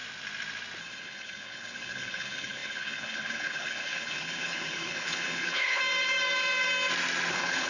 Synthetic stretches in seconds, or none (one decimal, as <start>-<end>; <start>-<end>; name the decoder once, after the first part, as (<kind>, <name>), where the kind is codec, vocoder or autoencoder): 0.8-5.8 (codec, HILCodec); 7.3-7.7